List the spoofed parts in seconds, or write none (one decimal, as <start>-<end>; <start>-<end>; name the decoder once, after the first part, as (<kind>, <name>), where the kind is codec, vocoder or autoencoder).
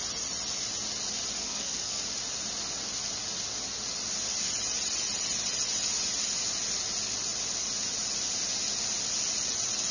1.4-2.0 (codec, SNAC)